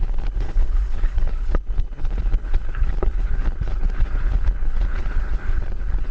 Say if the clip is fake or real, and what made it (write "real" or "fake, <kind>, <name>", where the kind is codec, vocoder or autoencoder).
fake, codec, HILCodec